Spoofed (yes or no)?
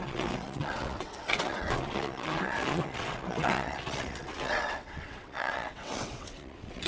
yes